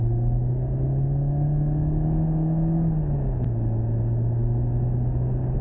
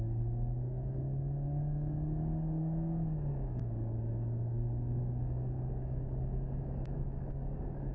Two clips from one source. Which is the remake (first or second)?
second